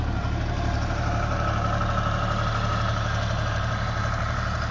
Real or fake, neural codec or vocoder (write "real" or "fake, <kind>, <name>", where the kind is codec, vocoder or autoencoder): fake, vocoder, BigVGAN v2